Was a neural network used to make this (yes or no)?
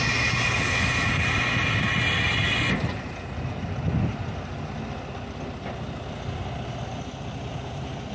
no